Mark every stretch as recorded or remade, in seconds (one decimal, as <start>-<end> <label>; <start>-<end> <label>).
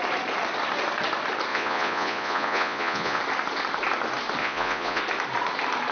0.0-1.5 recorded; 1.5-3.2 remade; 3.2-4.4 recorded; 4.4-5.0 remade; 5.0-5.9 recorded